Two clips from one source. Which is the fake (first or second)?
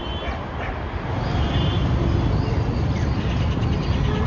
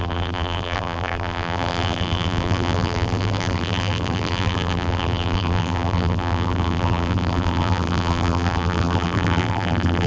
second